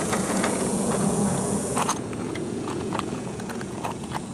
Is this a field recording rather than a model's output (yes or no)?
no